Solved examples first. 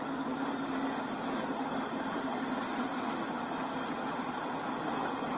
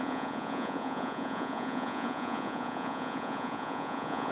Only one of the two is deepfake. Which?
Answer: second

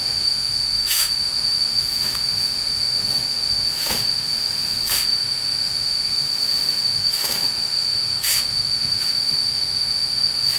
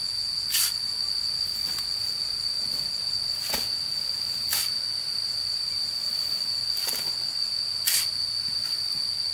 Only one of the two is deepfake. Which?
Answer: first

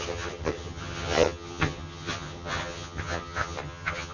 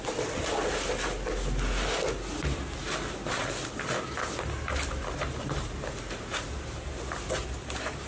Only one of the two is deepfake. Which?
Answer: first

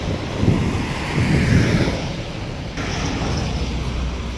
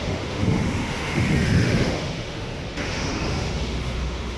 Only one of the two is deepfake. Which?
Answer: second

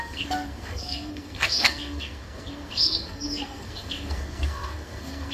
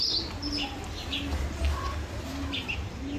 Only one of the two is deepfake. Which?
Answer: first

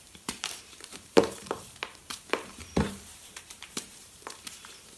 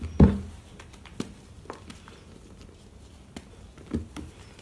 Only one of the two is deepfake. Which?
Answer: first